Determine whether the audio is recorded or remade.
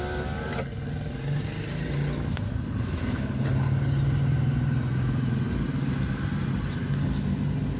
recorded